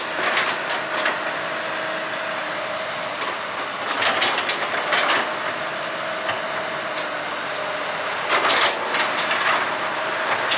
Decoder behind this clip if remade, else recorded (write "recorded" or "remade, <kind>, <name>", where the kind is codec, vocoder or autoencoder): recorded